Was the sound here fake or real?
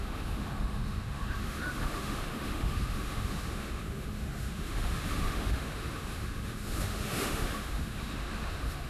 fake